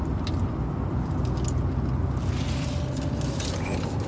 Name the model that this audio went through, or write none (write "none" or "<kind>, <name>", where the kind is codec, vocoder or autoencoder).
none